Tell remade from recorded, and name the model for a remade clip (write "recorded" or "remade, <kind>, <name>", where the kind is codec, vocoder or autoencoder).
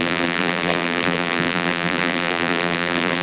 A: remade, vocoder, BigVGAN v2